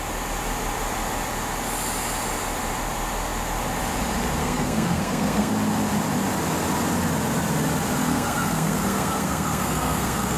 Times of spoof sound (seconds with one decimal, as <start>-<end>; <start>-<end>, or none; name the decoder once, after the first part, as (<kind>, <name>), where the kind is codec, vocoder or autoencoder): 4.4-5.5 (codec, SNAC); 8.0-10.4

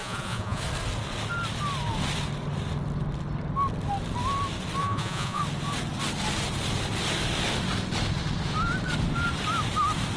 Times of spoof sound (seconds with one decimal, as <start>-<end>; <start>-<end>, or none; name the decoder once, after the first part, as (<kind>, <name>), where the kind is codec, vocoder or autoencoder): 0.0-0.6 (vocoder, Vocos); 4.8-5.4

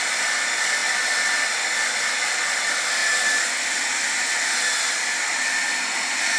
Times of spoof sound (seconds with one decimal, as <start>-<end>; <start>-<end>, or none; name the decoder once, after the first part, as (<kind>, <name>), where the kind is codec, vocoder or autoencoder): none

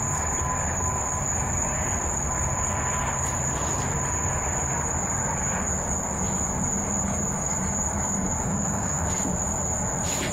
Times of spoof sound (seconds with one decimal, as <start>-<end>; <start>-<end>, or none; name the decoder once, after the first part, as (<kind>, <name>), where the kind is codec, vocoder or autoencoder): 8.4-9.1 (autoencoder, DAC-VAE)

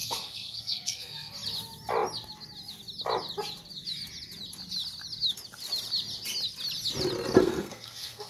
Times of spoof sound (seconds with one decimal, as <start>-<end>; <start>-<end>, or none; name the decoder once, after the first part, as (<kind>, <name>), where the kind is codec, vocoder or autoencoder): 0.0-1.3 (codec, SNAC); 7.4-8.3